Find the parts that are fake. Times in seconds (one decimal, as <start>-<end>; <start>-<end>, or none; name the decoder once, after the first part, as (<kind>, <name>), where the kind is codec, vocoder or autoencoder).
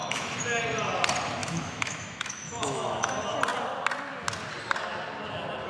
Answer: 0.0-0.6 (autoencoder, DAC-VAE); 1.4-3.1